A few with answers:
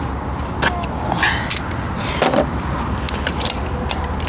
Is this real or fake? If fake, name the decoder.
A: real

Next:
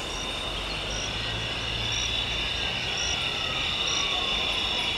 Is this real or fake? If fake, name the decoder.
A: real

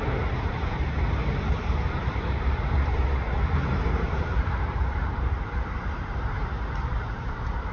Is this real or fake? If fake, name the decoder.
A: fake, vocoder, BigVGAN v2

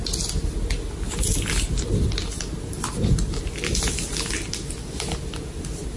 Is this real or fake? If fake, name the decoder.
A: real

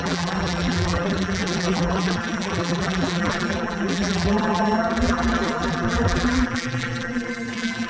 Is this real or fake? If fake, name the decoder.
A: fake, vocoder, BigVGAN v2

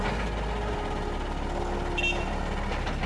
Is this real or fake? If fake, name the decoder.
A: real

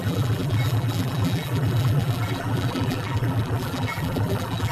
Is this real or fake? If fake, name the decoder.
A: fake, vocoder, BigVGAN v2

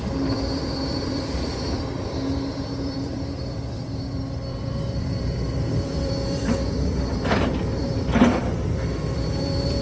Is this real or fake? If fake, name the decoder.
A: fake, vocoder, BigVGAN v2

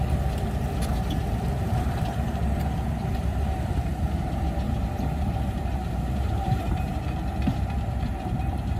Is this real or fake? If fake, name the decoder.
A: fake, vocoder, BigVGAN v2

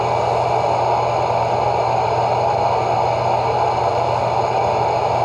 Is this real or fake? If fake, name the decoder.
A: real